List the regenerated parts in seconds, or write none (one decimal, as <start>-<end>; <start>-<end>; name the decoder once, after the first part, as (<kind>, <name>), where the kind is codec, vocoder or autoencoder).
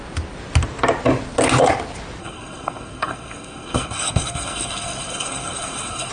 2.2-6.1 (codec, SNAC)